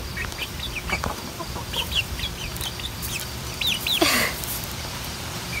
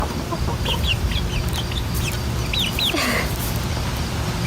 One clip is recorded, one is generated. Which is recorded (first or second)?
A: second